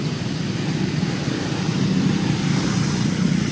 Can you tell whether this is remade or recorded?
recorded